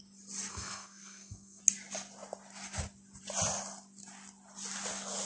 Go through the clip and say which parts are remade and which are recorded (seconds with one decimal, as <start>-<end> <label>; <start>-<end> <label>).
0.0-0.5 recorded; 0.5-1.6 remade; 1.6-5.3 recorded